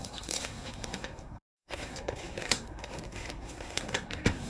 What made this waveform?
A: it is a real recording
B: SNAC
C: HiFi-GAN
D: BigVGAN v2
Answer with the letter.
B